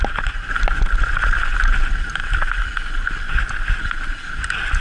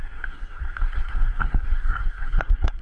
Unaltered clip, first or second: first